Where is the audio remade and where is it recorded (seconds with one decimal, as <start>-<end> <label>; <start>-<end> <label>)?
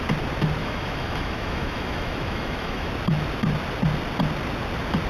0.0-0.6 recorded; 0.6-2.9 remade; 2.9-5.1 recorded